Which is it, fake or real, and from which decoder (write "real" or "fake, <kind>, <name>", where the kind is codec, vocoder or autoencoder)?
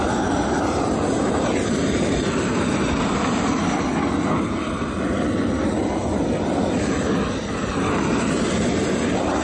real